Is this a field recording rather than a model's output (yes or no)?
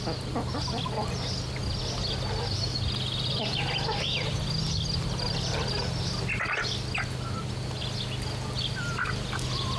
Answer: yes